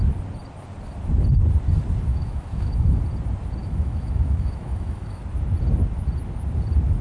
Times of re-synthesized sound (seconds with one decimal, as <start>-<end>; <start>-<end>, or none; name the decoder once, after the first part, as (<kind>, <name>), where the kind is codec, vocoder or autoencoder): 2.1-3.0 (autoencoder, DAC-VAE); 3.6-5.2